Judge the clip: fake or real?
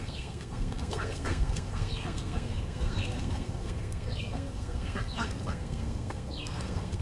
fake